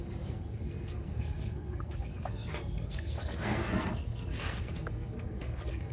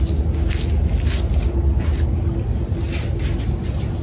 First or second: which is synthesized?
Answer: first